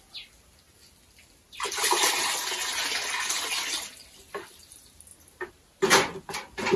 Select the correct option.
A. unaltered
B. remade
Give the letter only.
A